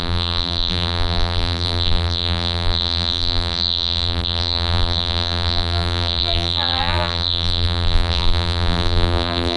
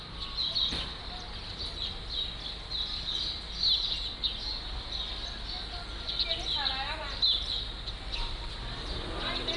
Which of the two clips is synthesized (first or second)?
first